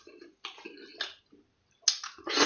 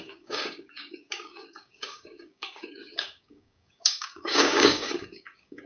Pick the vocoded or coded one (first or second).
second